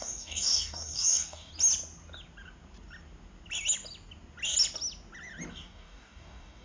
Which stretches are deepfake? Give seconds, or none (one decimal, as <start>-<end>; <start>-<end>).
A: 0.0-1.5; 5.5-6.6